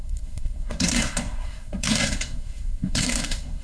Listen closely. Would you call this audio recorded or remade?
remade